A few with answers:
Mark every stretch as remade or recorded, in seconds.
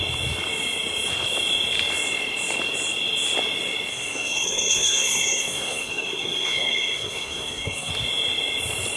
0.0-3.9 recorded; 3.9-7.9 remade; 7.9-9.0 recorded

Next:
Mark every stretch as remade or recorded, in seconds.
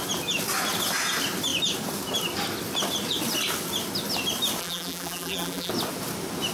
0.0-4.6 recorded; 4.6-5.7 remade; 5.7-6.5 recorded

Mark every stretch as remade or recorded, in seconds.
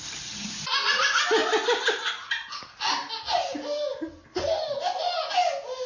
0.0-5.9 recorded